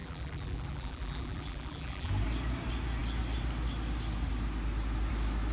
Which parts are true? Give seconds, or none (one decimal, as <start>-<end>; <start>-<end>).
2.1-5.5